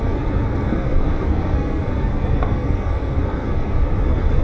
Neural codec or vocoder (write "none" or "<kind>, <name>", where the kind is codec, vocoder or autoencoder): codec, SNAC